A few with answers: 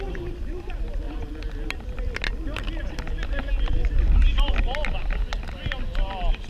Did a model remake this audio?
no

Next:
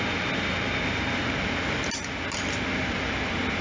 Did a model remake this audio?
no